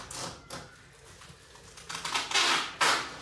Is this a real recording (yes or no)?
yes